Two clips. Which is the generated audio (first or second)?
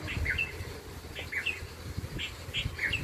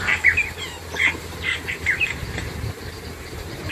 second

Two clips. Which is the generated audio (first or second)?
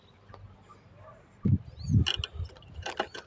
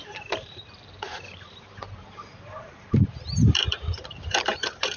second